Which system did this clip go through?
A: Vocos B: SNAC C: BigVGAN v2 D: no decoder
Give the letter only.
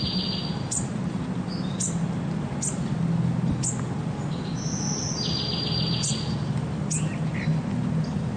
D